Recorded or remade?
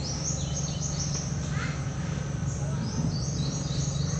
recorded